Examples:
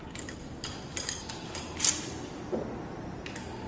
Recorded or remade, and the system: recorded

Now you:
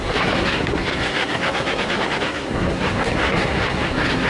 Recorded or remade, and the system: remade, codec, SNAC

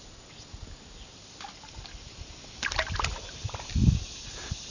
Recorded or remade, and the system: recorded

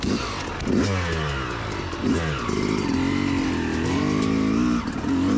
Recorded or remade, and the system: recorded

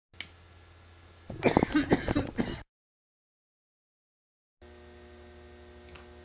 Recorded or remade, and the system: recorded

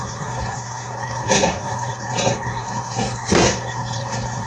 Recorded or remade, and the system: remade, codec, SNAC